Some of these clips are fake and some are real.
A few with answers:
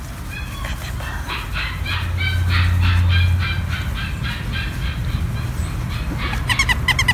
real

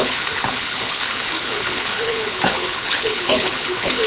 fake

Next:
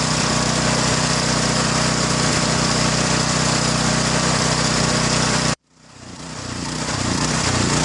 fake